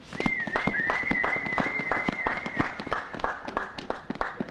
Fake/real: fake